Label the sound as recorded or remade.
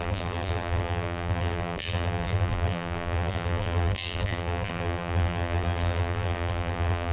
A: remade